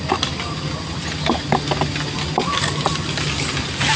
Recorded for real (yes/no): yes